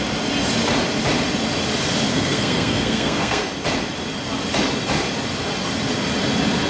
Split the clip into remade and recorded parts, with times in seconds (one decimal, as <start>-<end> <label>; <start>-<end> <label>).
0.0-2.1 recorded; 2.1-3.4 remade; 3.4-6.7 recorded